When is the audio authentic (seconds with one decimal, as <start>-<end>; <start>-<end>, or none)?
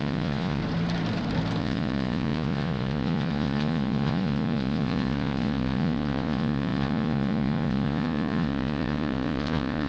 0.6-1.6